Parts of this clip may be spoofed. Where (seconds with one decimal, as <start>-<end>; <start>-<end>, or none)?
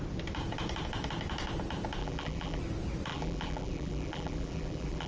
2.0-2.6; 3.1-5.1